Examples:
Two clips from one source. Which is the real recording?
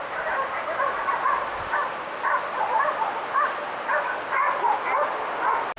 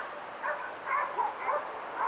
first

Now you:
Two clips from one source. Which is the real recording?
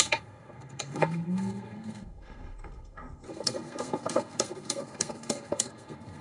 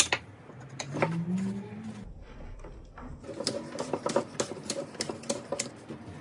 second